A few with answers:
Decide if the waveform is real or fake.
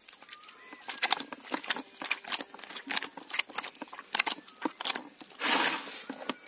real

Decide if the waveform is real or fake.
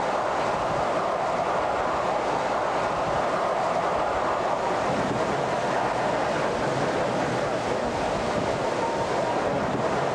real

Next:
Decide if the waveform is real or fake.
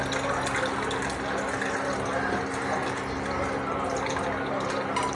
real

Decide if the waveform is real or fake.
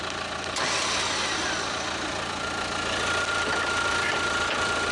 real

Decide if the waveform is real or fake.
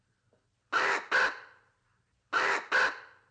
real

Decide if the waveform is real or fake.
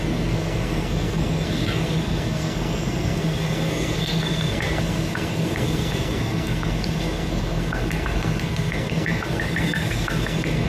fake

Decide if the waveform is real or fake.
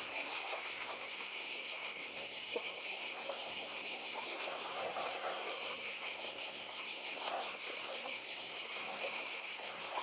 fake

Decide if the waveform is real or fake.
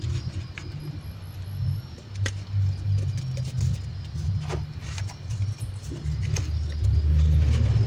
real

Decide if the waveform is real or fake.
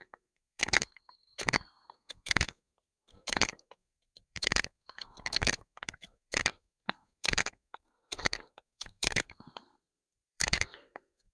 fake